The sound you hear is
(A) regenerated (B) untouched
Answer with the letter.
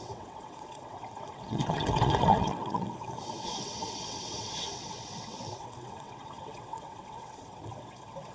A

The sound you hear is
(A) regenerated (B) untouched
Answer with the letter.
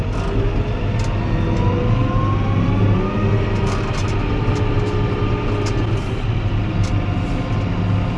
B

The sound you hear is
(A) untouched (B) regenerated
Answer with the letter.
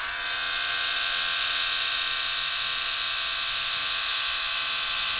B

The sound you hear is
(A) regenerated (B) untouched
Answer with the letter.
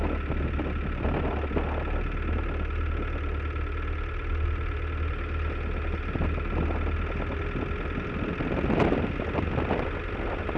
B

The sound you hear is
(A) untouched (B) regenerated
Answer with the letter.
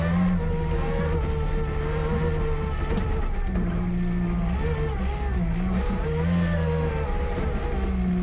A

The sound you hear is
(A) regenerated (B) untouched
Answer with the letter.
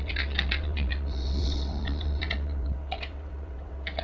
A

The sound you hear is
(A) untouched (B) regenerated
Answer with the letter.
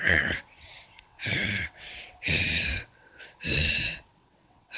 B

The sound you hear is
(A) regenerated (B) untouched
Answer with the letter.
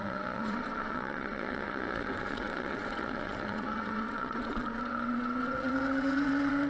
A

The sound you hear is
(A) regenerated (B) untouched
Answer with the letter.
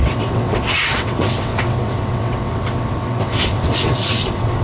A